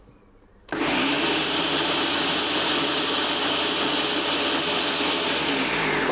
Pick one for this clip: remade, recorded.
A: recorded